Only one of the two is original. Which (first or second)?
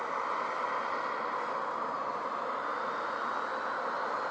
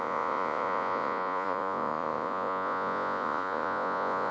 first